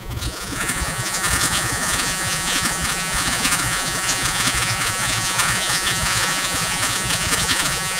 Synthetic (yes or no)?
yes